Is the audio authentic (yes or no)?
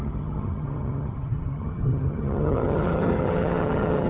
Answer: no